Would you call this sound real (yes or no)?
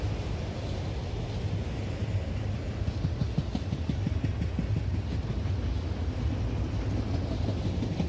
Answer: yes